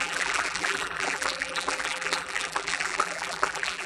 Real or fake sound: fake